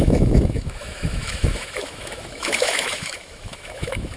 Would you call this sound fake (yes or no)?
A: yes